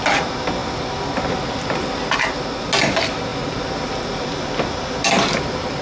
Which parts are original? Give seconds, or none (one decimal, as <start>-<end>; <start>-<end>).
0.0-3.3